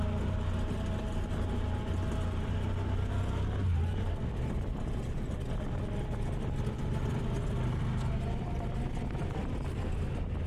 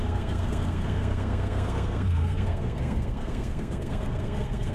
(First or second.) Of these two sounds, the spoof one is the second